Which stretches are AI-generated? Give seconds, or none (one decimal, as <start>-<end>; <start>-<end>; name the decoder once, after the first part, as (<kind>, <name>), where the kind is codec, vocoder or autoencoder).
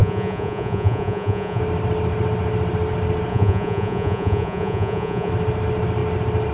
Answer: 0.0-1.6 (vocoder, Vocos); 3.3-5.3